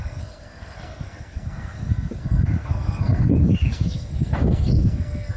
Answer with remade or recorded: remade